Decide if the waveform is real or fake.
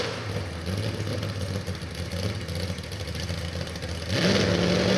real